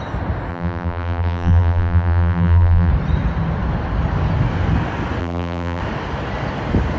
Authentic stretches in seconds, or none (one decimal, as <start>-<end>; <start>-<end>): 0.0-0.5; 2.9-5.2; 5.8-7.0